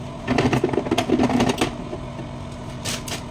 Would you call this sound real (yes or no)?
yes